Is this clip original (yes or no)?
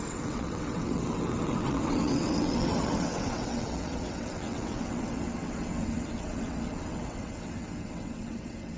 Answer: no